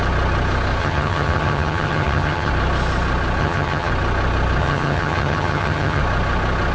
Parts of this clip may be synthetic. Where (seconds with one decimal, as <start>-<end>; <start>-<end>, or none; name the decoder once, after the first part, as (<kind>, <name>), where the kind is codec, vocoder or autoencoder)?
0.8-2.5 (vocoder, HiFi-GAN); 3.4-3.9; 4.6-6.0